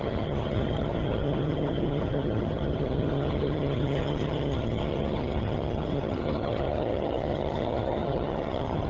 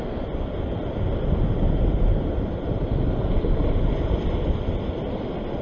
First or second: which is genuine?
second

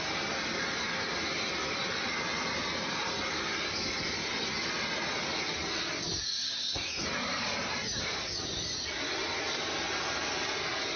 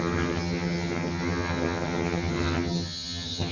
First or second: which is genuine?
first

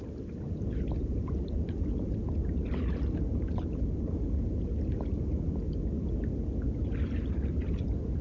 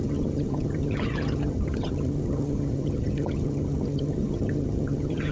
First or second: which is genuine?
first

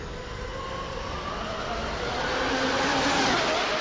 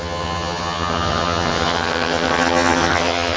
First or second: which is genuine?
first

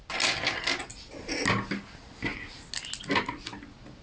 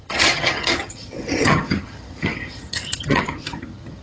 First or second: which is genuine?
first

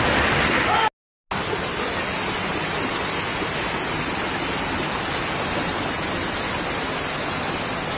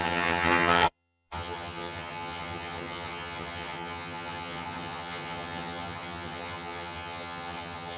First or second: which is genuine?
first